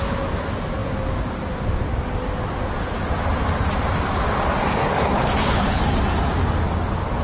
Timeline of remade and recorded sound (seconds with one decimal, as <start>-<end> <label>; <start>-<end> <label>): 0.0-4.8 recorded; 4.8-5.8 remade; 5.8-7.2 recorded